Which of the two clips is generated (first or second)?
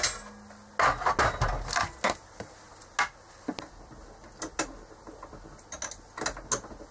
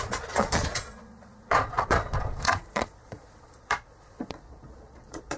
second